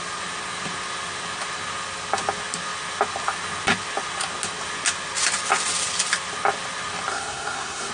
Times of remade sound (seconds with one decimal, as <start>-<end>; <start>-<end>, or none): 7.1-7.9